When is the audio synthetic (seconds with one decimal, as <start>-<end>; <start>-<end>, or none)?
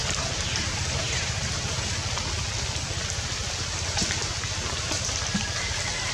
0.0-1.9